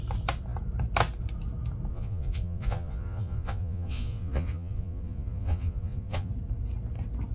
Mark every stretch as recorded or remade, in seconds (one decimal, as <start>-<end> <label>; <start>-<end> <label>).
0.0-1.9 recorded; 1.9-6.3 remade; 6.3-7.3 recorded